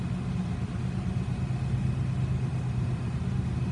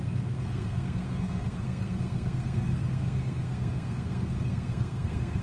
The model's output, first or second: second